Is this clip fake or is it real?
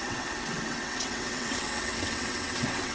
fake